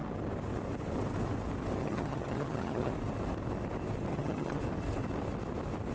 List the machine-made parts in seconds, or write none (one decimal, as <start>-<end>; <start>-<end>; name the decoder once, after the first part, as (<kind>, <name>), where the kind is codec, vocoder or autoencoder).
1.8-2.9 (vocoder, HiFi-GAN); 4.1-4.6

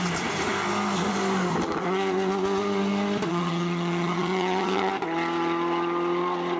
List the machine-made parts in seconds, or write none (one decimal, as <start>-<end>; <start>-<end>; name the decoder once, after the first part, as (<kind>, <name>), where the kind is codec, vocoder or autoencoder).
3.3-4.9 (vocoder, HiFi-GAN)

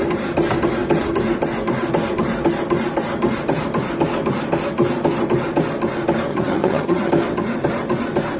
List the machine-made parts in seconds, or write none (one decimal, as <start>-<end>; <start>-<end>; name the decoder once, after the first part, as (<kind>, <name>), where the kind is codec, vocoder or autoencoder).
6.3-7.1 (vocoder, HiFi-GAN)

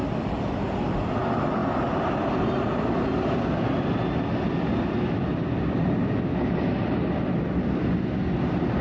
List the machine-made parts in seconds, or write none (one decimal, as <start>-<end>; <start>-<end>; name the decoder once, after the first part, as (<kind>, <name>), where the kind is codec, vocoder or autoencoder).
none